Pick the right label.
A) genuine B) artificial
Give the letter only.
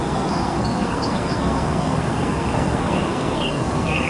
B